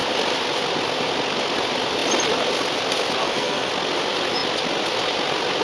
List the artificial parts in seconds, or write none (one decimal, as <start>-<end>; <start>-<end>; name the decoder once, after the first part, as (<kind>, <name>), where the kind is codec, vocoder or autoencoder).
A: 3.2-3.7 (codec, SNAC)